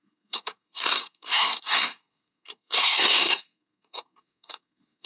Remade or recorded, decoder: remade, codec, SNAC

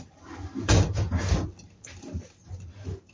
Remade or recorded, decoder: recorded